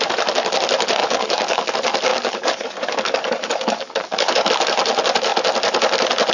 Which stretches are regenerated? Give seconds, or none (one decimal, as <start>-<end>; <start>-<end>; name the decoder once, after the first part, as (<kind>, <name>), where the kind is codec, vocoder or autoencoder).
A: 1.0-1.7 (codec, DAC); 2.1-4.5